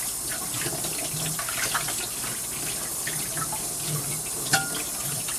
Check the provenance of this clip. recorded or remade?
recorded